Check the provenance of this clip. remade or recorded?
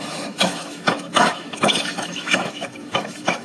remade